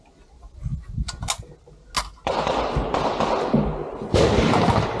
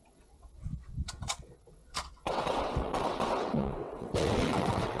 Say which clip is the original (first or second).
first